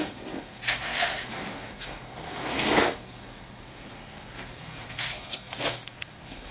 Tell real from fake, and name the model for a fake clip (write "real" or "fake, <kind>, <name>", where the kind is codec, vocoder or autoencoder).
fake, codec, SNAC